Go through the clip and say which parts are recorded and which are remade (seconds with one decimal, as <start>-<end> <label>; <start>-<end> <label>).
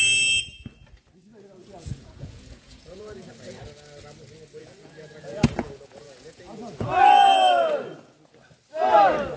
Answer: 0.0-1.6 recorded; 1.6-3.3 remade; 3.3-4.6 recorded; 4.6-7.0 remade; 7.0-9.4 recorded